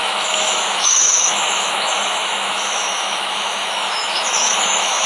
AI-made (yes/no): yes